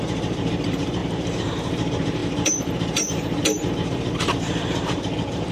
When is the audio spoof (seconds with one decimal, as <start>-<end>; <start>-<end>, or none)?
0.0-5.5